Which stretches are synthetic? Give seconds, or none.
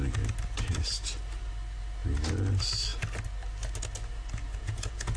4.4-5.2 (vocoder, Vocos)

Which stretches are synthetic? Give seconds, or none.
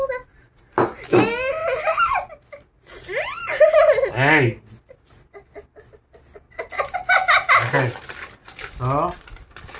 none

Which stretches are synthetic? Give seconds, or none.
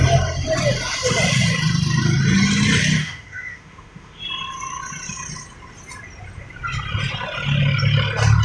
3.0-4.2 (autoencoder, DAC-VAE)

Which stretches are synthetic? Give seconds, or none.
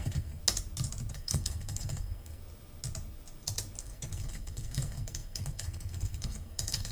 0.0-0.4 (codec, SNAC); 1.1-2.4; 3.8-6.9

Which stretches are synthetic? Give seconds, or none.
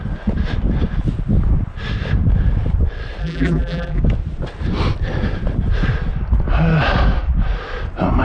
3.2-4.0 (vocoder, BigVGAN v2)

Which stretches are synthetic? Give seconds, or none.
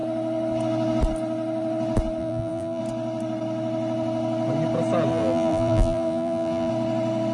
2.2-2.8 (vocoder, BigVGAN v2); 5.1-6.7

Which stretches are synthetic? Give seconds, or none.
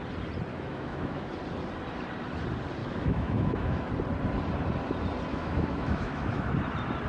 0.5-1.3 (autoencoder, DAC-VAE); 2.8-3.9; 5.3-6.5